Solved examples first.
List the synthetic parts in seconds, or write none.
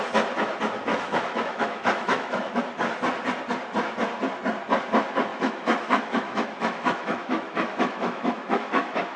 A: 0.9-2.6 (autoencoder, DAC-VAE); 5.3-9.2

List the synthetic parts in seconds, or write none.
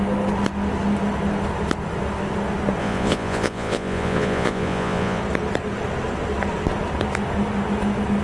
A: 2.8-5.2 (vocoder, Vocos)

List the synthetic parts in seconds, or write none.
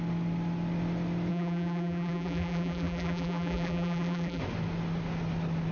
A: 1.3-4.4 (vocoder, BigVGAN v2)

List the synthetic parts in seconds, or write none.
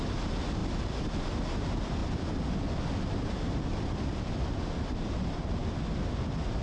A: none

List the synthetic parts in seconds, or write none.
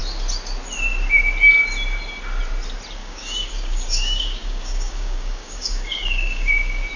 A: 3.0-6.5 (codec, DAC)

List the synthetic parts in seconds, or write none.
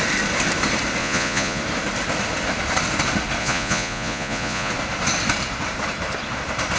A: 1.0-1.6 (vocoder, Vocos); 3.4-4.7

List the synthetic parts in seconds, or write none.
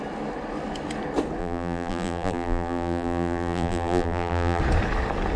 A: 1.4-4.6 (vocoder, BigVGAN v2)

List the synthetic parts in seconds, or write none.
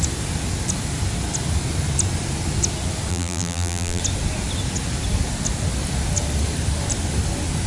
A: 3.1-4.0 (vocoder, BigVGAN v2)